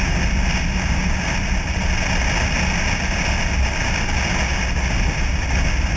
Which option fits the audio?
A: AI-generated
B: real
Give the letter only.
B